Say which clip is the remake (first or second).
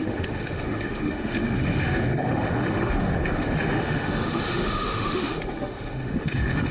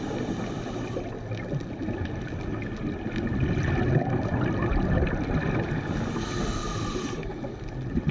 first